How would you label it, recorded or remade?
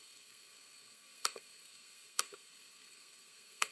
remade